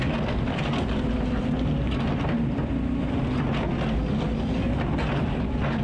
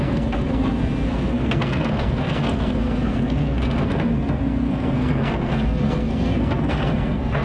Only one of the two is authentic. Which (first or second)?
first